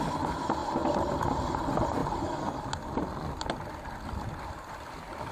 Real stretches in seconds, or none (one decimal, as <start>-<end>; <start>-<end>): 0.0-5.3